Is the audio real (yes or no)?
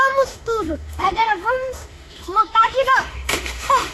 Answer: no